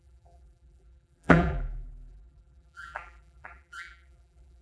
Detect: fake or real fake